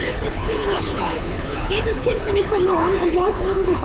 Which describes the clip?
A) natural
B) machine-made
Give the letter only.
B